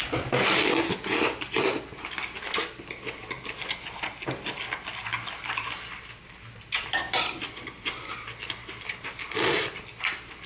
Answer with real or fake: real